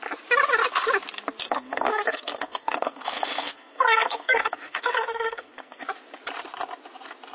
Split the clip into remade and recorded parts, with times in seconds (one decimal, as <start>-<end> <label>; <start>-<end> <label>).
0.0-1.4 recorded; 1.4-5.8 remade; 5.8-7.3 recorded